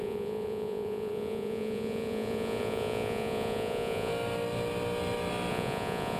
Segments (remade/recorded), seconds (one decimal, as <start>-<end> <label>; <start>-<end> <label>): 0.0-4.1 remade; 4.1-5.5 recorded; 5.5-6.2 remade

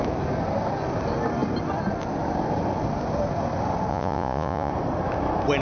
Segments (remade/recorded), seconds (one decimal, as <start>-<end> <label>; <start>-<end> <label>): 0.0-3.9 recorded; 3.9-4.7 remade; 4.7-5.6 recorded